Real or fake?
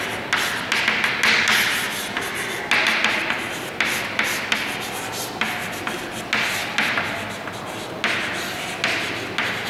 real